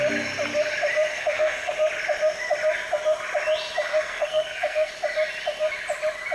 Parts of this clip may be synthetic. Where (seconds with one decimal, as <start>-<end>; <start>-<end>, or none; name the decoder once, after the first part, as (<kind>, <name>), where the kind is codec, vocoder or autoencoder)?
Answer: 1.1-1.7 (codec, SNAC); 3.9-4.9